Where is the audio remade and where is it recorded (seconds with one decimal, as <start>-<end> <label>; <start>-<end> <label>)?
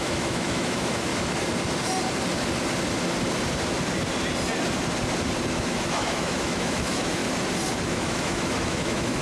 0.0-1.1 remade; 1.1-5.5 recorded; 5.5-7.2 remade; 7.2-7.8 recorded; 7.8-9.2 remade